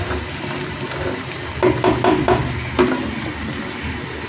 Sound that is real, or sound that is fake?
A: real